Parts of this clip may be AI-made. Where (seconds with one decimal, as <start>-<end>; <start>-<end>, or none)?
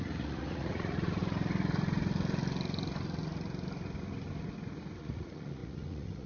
0.0-1.2; 5.0-6.3